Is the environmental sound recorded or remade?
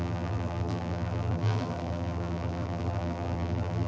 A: remade